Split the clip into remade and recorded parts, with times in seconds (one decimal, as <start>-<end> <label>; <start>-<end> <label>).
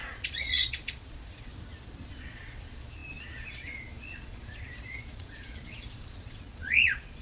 0.0-1.5 remade; 1.5-2.1 recorded; 2.1-7.2 remade